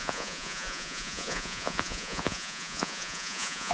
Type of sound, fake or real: fake